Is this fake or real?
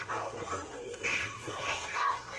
fake